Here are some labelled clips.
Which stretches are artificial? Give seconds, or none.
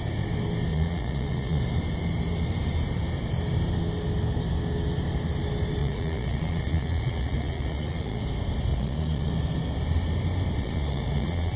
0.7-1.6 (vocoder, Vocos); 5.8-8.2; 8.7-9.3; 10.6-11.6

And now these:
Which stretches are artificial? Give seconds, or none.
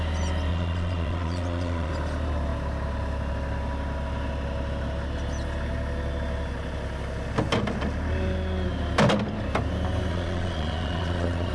0.5-1.9 (vocoder, Vocos); 10.1-11.5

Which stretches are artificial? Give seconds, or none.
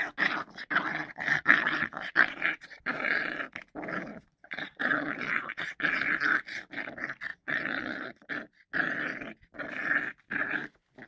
0.9-3.4 (vocoder, Vocos); 4.1-6.1; 7.3-8.3